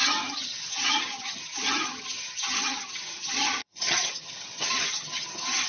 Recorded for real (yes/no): no